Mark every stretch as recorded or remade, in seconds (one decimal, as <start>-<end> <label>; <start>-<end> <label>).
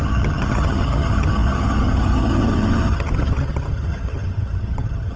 0.0-5.2 remade